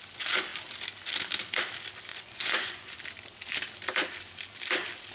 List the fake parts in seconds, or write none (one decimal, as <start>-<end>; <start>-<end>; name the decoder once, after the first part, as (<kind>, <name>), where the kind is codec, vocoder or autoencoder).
2.1-2.9 (vocoder, Vocos)